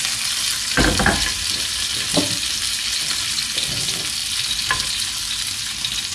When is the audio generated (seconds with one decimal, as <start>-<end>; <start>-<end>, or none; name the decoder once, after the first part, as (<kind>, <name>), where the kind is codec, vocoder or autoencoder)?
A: none